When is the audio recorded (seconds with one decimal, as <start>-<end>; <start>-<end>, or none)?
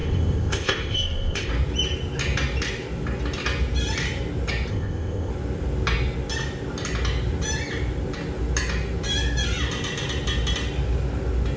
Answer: 1.5-4.7; 5.3-11.6